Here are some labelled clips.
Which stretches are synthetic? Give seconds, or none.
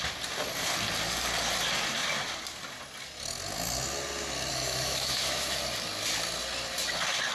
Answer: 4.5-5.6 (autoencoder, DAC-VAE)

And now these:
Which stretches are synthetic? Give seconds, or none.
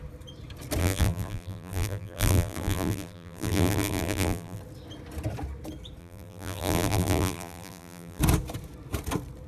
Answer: 0.8-4.6 (vocoder, BigVGAN v2); 6.0-8.2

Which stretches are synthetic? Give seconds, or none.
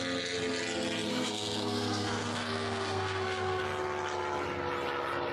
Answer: 1.1-3.6 (codec, SNAC)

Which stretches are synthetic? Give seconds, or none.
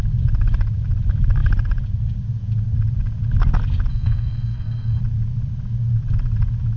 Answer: 3.9-5.0 (codec, SNAC)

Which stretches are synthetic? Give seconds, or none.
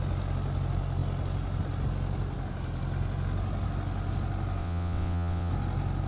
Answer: 4.6-5.5 (vocoder, WaveNeXt)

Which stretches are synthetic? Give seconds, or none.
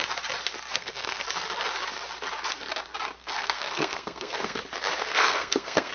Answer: 0.7-1.2 (codec, SNAC); 3.2-4.6; 5.0-5.9